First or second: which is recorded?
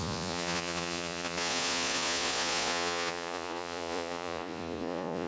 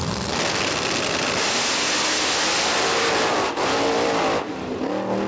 second